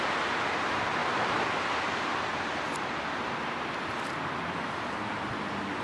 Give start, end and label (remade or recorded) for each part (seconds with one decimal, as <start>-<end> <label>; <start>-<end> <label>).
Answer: 0.0-5.8 recorded